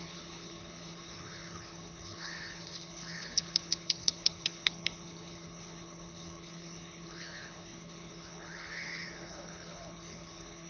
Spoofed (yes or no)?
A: yes